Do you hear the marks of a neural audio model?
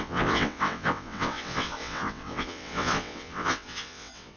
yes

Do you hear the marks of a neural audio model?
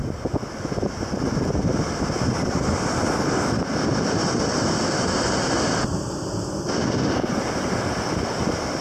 yes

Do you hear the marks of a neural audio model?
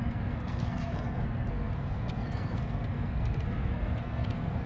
yes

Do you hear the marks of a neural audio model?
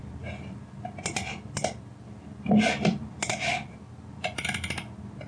no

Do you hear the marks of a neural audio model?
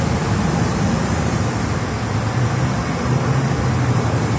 no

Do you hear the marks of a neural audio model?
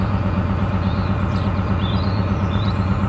yes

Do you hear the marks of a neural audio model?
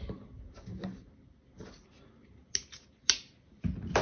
no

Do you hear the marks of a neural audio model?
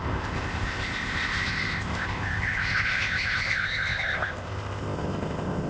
yes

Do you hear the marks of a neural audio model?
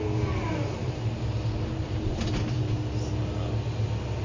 no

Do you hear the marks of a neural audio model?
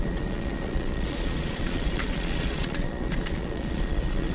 yes